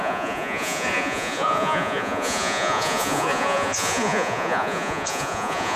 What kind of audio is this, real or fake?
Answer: fake